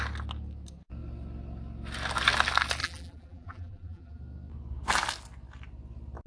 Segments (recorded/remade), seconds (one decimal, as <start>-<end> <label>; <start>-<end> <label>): 0.0-2.8 recorded; 2.8-4.2 remade; 4.2-6.3 recorded